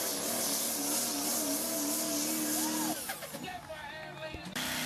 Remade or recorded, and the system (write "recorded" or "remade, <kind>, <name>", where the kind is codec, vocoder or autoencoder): recorded